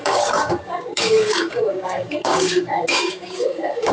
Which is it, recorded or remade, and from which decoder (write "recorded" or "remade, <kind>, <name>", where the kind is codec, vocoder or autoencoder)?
remade, codec, DAC